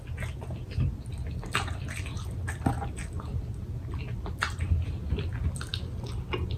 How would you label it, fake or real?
real